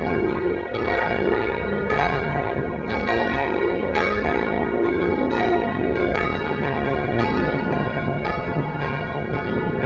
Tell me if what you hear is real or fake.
fake